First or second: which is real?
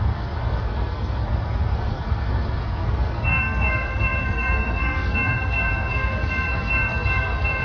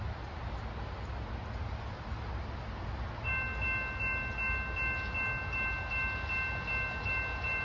second